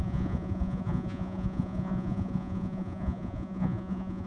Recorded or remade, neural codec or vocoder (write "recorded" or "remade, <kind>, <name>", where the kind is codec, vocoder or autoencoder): remade, vocoder, Vocos